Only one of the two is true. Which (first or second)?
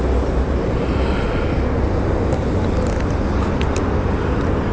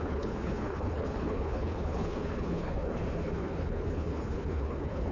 first